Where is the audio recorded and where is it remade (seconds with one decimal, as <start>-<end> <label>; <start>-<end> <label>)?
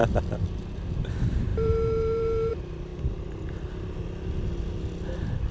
0.0-1.5 recorded; 1.5-2.5 remade; 2.5-5.5 recorded